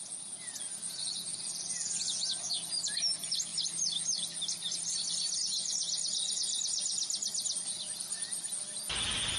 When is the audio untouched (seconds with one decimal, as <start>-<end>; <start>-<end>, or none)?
0.0-3.5; 8.5-9.4